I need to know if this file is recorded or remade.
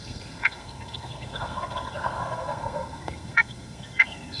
remade